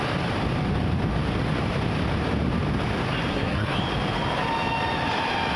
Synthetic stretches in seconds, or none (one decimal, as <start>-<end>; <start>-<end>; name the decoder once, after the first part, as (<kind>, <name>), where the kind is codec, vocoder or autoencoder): 3.3-3.8 (codec, SNAC)